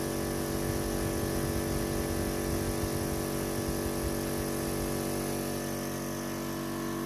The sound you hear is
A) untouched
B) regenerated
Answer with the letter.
A